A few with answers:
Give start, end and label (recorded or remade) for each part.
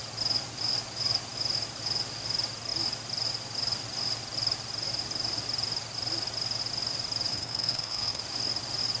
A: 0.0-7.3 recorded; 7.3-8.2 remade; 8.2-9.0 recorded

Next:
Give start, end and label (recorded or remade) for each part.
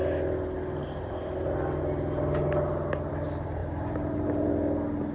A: 0.0-3.6 recorded; 3.6-4.5 remade; 4.5-5.1 recorded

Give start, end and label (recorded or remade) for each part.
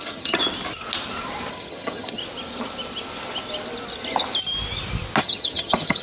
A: 0.0-0.4 remade; 0.4-1.5 recorded; 1.5-2.2 remade; 2.2-5.2 recorded; 5.2-6.0 remade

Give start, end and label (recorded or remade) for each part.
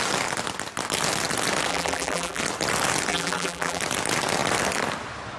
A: 0.0-1.7 recorded; 1.7-2.4 remade; 2.4-3.1 recorded; 3.1-3.8 remade; 3.8-5.4 recorded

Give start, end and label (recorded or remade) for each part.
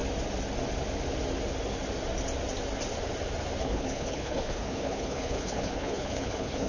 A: 0.0-3.6 recorded; 3.6-6.7 remade